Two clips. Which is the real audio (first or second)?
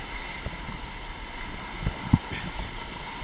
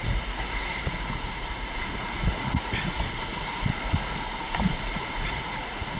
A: first